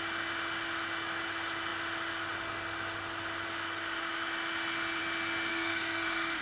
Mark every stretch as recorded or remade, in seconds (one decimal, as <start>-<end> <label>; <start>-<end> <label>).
0.0-5.5 recorded; 5.5-6.4 remade